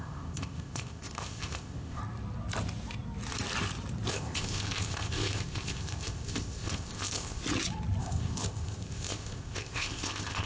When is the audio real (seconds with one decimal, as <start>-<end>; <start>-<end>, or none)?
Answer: 2.0-4.1; 7.4-8.0